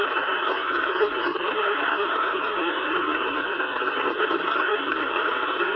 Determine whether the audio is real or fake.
fake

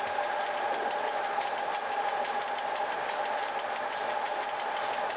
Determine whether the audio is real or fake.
real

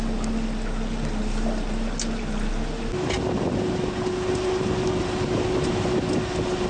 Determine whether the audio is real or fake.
real